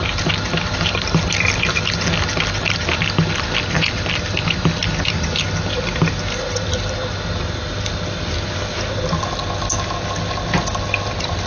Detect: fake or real real